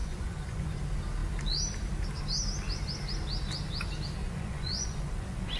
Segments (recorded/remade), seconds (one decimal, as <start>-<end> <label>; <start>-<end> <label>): 0.0-0.7 remade; 0.7-4.2 recorded; 4.2-5.6 remade